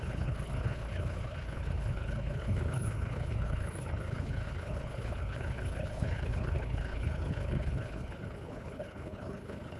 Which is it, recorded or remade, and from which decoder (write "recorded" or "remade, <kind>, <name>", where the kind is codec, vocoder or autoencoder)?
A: remade, codec, HILCodec